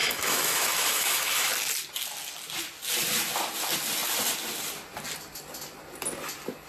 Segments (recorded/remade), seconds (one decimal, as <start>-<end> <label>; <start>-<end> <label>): 0.0-1.5 remade; 1.5-6.7 recorded